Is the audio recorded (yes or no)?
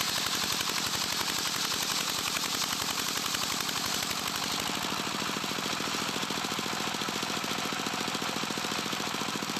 yes